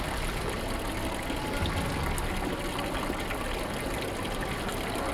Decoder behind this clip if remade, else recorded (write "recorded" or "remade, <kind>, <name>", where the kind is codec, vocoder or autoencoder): recorded